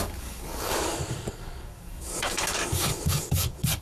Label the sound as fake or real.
fake